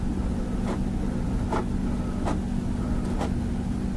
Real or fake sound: real